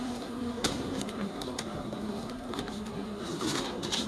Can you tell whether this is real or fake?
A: fake